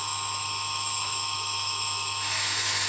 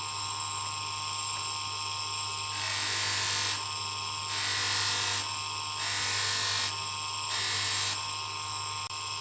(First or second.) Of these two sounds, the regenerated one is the first